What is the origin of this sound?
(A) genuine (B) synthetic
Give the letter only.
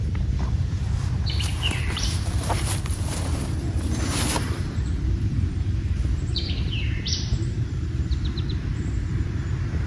B